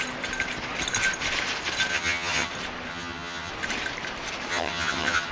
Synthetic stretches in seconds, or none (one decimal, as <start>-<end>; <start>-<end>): 1.9-2.5; 2.9-3.5; 4.5-5.3